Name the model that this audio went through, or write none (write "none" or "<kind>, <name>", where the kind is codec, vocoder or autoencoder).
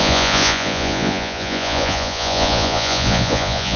vocoder, Vocos